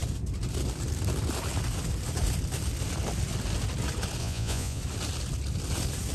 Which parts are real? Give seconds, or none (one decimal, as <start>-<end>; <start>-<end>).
0.0-4.2; 4.8-6.1